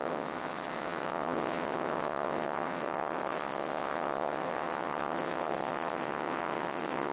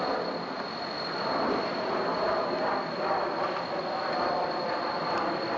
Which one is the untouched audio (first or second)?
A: second